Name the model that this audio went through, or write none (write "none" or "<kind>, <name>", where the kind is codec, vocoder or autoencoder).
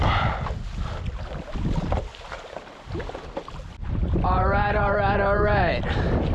none